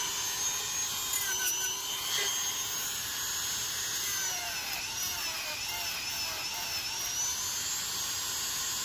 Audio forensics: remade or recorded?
recorded